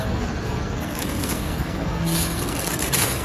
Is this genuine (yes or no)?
no